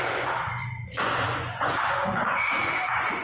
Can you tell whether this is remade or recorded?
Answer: remade